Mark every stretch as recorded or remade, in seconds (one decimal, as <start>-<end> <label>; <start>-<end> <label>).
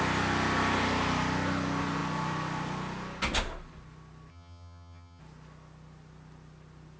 0.0-4.3 recorded; 4.3-5.2 remade; 5.2-7.0 recorded